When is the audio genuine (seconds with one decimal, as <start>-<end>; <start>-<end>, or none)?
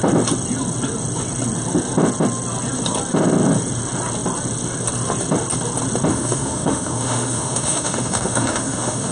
0.0-6.1